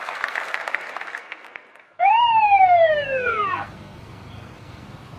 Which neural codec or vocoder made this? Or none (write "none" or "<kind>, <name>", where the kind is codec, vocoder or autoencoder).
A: codec, SNAC